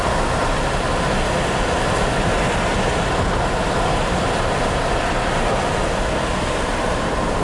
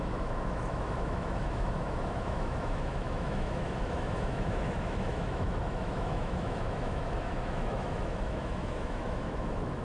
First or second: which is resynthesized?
second